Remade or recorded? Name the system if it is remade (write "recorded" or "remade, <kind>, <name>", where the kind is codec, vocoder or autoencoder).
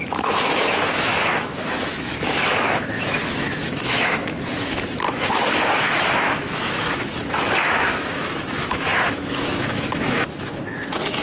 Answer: remade, autoencoder, DAC-VAE